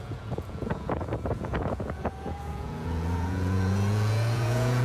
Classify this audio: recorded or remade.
remade